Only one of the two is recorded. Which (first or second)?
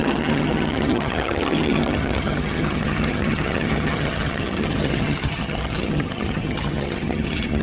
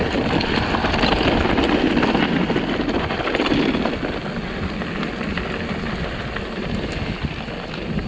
second